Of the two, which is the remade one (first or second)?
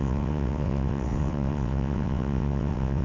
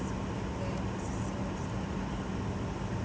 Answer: first